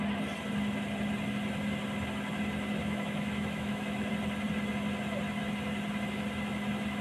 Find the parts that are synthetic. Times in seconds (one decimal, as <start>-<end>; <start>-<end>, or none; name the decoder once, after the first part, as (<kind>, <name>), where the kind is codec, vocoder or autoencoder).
2.8-4.1 (autoencoder, DAC-VAE)